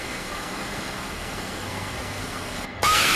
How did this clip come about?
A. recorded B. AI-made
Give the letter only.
B